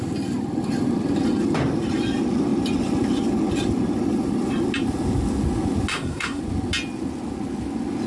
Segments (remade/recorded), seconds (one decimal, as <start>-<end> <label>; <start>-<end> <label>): 0.0-5.9 recorded; 5.9-6.4 remade; 6.4-8.1 recorded